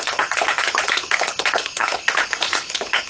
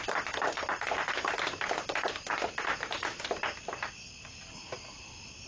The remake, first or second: first